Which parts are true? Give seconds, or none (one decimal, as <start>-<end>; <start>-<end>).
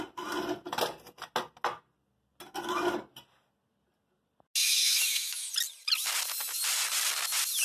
0.0-4.6; 5.5-7.6